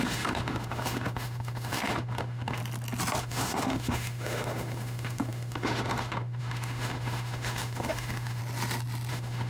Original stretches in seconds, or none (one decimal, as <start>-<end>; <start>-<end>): 2.6-3.2; 8.4-9.1